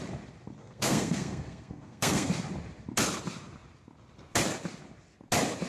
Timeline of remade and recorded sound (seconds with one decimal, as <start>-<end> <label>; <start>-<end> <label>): 0.0-0.6 recorded; 0.6-2.3 remade; 2.3-5.7 recorded